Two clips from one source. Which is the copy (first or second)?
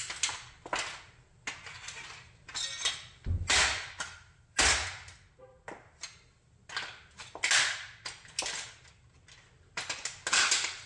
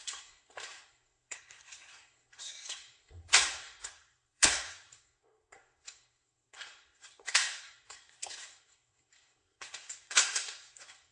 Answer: second